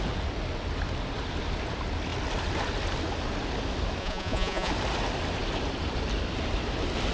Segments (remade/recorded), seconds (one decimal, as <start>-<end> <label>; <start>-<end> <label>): 0.0-4.0 recorded; 4.0-4.7 remade; 4.7-7.1 recorded